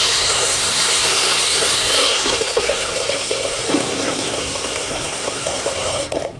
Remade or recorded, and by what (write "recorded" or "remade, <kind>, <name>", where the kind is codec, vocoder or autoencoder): remade, codec, SNAC